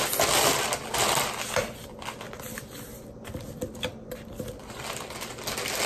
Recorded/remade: recorded